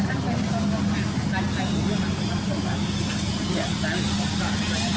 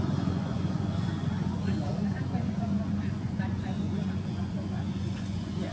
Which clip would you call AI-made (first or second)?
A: second